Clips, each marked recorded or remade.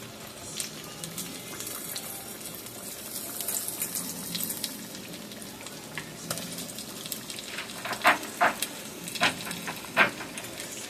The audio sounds recorded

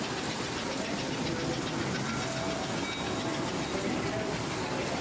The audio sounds recorded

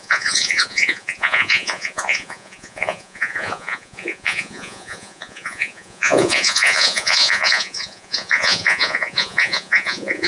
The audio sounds remade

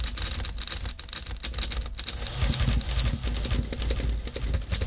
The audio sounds recorded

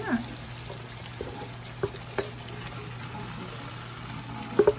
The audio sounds recorded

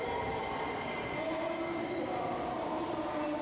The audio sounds recorded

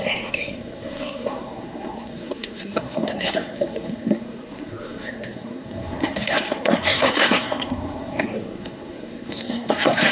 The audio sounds remade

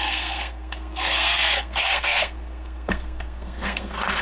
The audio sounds remade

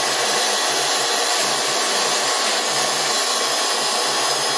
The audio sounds recorded